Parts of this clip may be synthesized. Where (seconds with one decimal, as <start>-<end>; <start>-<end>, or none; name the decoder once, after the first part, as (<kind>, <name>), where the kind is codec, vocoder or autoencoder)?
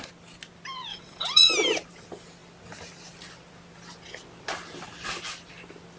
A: 0.9-1.5 (vocoder, WaveNeXt)